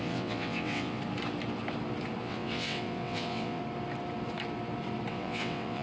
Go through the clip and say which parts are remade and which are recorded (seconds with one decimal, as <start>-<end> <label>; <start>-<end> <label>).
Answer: 0.0-1.0 remade; 1.0-2.2 recorded; 2.2-3.6 remade; 3.6-5.1 recorded; 5.1-5.8 remade